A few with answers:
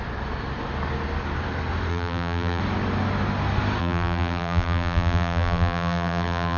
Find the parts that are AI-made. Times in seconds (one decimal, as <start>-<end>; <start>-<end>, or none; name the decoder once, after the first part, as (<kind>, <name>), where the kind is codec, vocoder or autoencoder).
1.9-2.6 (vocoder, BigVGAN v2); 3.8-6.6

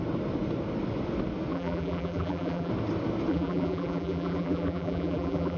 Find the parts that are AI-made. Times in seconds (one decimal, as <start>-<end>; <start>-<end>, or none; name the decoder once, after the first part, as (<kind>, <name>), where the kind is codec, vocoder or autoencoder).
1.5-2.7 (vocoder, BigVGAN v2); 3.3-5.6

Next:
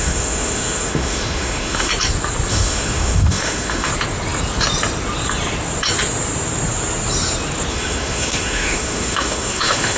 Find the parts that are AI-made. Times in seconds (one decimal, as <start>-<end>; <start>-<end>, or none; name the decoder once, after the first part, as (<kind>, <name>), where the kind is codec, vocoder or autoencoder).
0.0-1.9 (autoencoder, DAC-VAE); 2.5-3.9; 7.7-10.0

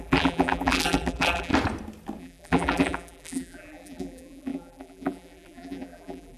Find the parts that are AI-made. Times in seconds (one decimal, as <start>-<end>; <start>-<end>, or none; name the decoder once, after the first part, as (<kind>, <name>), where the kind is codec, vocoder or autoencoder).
0.0-1.5 (vocoder, BigVGAN v2); 2.2-6.4